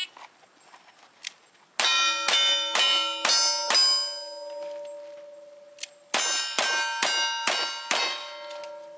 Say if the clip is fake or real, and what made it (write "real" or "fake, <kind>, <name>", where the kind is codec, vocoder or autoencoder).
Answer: real